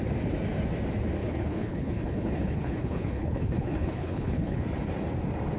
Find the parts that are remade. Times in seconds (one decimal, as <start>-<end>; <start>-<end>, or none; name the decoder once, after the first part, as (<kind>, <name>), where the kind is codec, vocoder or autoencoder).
1.2-4.6 (codec, HILCodec)